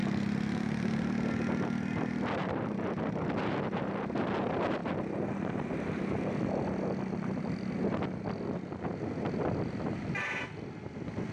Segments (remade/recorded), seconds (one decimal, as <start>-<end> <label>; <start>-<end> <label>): 0.0-11.3 recorded